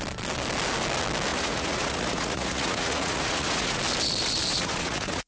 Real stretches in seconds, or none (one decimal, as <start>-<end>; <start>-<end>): 0.0-1.3; 3.8-4.5